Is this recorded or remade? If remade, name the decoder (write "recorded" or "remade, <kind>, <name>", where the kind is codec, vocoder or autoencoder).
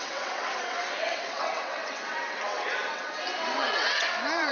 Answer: remade, vocoder, WaveNeXt